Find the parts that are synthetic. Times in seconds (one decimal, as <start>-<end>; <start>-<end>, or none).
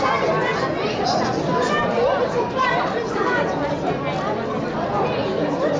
none